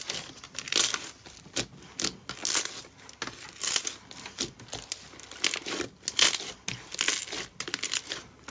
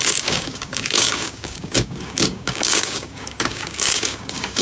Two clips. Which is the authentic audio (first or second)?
first